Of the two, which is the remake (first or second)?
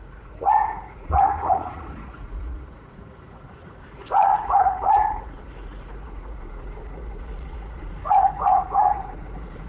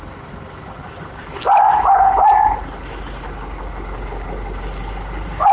first